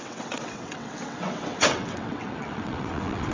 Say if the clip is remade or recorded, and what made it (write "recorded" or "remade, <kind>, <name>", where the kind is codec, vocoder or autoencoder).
remade, vocoder, WaveNeXt